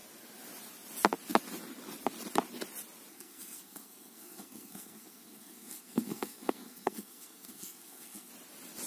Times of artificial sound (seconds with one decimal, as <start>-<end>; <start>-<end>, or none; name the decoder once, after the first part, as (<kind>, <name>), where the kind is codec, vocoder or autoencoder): 3.1-8.3 (codec, SNAC)